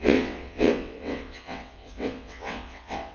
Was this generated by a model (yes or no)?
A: yes